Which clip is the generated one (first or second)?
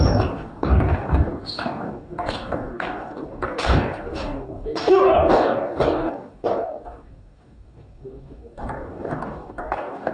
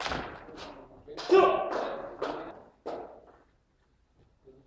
first